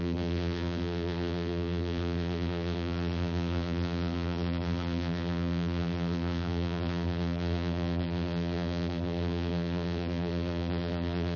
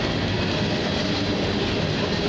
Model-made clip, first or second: first